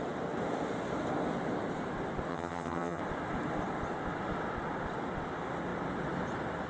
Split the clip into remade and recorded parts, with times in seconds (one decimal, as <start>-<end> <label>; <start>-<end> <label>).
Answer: 0.0-2.3 recorded; 2.3-3.0 remade; 3.0-6.7 recorded